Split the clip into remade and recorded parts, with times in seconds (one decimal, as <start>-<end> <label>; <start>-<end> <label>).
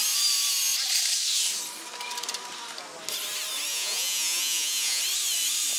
0.0-3.7 recorded; 3.7-5.0 remade; 5.0-5.8 recorded